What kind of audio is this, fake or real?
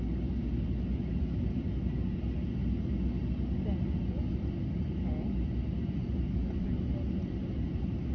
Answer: real